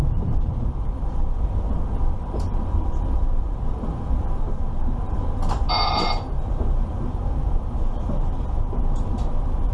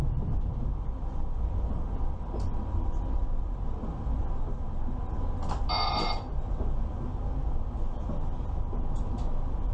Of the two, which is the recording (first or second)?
second